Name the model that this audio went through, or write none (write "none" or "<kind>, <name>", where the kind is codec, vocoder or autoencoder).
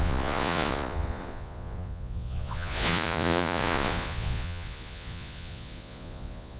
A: vocoder, Vocos